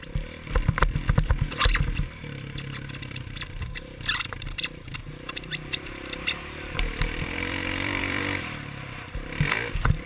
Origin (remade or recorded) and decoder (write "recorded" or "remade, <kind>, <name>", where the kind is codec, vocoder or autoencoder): remade, vocoder, BigVGAN v2